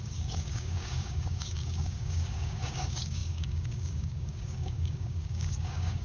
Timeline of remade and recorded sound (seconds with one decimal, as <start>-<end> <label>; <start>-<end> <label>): 0.0-6.0 remade